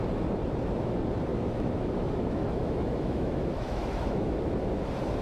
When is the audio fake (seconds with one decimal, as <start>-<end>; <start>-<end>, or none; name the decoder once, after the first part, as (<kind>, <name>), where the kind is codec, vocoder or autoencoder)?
1.3-4.4 (autoencoder, DAC-VAE)

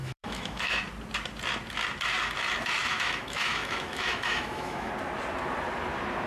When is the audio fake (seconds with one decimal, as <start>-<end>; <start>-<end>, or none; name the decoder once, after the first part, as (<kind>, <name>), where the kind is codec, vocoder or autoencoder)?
0.0-0.8 (autoencoder, DAC-VAE); 2.8-4.9

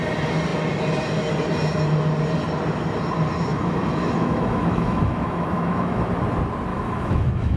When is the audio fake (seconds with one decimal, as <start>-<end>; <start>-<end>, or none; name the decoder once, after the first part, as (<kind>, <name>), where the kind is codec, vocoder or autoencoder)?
3.5-6.1 (autoencoder, DAC-VAE); 6.7-7.6

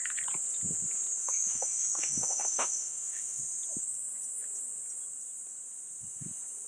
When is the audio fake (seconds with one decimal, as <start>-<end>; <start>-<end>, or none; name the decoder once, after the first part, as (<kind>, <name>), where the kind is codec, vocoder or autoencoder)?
1.2-3.4 (autoencoder, DAC-VAE)

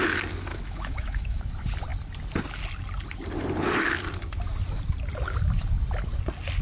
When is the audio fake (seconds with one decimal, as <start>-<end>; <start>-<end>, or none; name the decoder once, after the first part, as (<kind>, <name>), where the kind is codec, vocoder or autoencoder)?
0.5-1.4 (autoencoder, DAC-VAE)

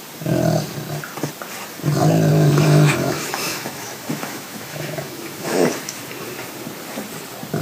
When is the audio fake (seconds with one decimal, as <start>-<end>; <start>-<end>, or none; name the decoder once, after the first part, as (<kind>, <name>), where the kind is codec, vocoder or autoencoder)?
2.3-6.0 (autoencoder, DAC-VAE)

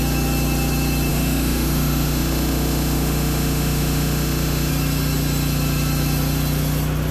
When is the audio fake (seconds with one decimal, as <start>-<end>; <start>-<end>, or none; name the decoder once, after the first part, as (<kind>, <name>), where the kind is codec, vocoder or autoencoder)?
1.1-4.7 (autoencoder, DAC-VAE)

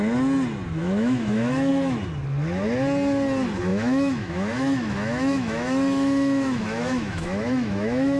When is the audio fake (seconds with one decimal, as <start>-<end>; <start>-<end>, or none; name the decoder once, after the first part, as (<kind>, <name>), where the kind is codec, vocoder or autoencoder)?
0.8-1.7 (autoencoder, DAC-VAE); 3.7-8.2